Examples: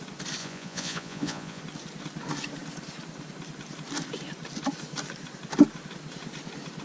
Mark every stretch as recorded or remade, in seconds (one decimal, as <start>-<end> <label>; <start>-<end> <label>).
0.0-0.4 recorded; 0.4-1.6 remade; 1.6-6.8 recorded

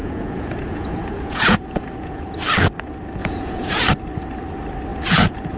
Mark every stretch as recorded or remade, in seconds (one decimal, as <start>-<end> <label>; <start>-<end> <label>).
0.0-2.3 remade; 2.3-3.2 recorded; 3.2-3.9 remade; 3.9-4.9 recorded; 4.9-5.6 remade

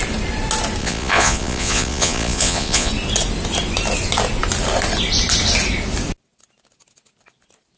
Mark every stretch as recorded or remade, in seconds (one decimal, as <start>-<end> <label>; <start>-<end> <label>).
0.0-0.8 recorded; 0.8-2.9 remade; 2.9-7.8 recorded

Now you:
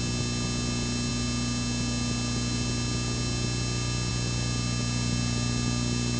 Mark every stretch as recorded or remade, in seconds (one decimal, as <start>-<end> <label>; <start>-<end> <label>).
0.0-6.2 recorded